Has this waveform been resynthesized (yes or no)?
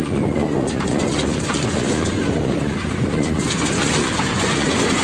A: yes